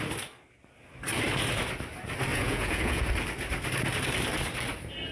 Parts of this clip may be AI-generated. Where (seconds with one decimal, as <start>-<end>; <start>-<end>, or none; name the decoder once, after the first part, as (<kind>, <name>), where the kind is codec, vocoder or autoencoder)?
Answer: 2.3-3.1 (vocoder, Vocos)